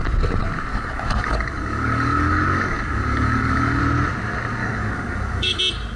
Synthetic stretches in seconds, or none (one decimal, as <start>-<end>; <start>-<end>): 0.7-3.8; 4.6-5.6

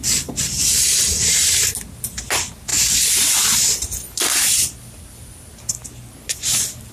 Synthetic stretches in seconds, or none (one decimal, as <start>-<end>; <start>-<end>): none

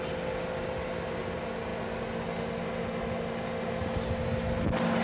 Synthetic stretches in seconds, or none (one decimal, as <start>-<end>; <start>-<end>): none

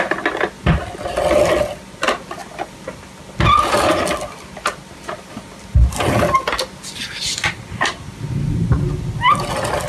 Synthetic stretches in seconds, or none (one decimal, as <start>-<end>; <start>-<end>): none